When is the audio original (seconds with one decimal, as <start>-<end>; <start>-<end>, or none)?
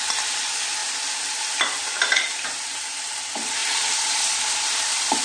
0.0-0.8; 2.8-5.2